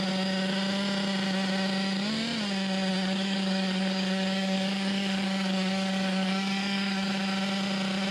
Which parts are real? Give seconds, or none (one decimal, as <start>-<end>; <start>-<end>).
0.0-2.9; 7.1-8.1